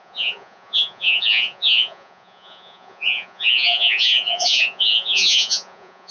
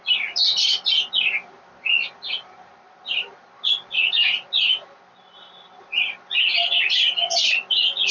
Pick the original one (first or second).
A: second